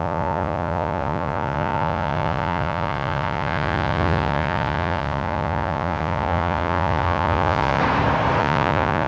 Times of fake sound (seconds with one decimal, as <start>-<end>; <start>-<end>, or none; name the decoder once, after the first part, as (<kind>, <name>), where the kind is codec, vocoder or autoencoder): 0.0-7.8 (vocoder, Vocos); 8.4-9.1